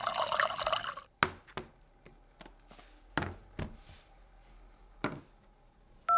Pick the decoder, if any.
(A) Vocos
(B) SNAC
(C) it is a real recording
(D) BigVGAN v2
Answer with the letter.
C